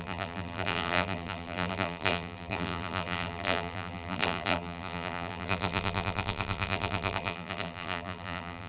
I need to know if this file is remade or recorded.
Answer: remade